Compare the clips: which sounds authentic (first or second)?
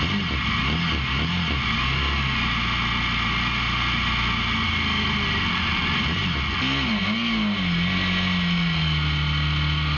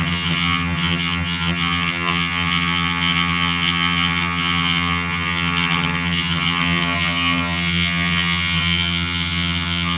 first